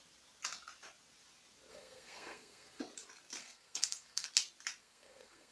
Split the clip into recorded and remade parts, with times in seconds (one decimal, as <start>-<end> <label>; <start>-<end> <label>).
0.0-1.7 recorded; 1.7-2.8 remade; 2.8-3.4 recorded; 3.4-4.3 remade; 4.3-4.8 recorded; 4.8-5.5 remade